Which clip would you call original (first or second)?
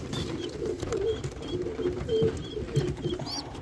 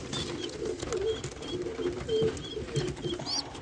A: second